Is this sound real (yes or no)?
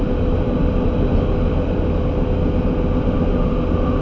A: yes